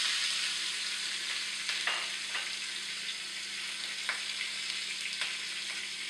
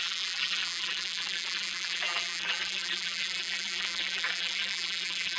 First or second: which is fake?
second